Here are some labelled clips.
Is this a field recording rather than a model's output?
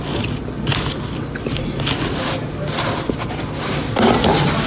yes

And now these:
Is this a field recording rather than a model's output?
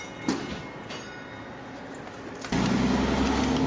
yes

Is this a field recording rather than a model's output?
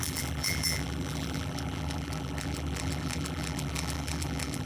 no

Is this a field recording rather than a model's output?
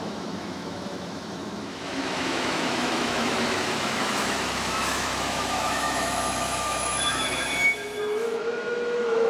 no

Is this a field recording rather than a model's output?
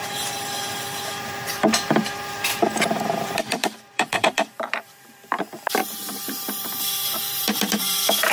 no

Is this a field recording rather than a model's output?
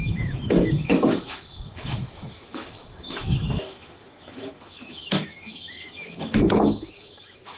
no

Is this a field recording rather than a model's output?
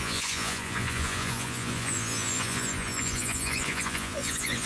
no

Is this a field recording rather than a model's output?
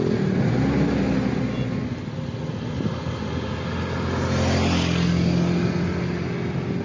yes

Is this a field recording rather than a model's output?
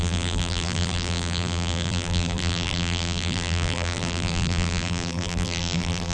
no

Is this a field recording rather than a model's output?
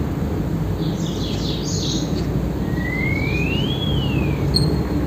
yes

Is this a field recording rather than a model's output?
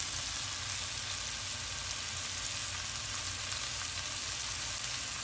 yes